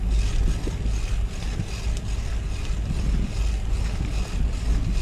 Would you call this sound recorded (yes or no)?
yes